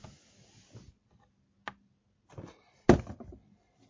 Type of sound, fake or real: real